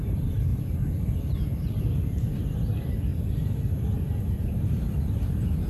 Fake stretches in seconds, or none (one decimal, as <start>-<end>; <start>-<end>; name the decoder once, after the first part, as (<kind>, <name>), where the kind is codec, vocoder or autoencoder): 3.1-3.8 (vocoder, BigVGAN v2)